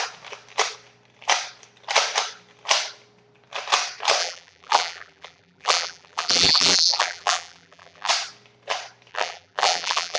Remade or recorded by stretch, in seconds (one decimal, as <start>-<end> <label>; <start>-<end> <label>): 0.0-4.2 recorded; 4.2-8.1 remade; 8.1-9.1 recorded; 9.1-10.2 remade